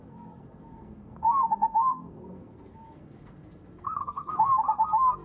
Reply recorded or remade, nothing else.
remade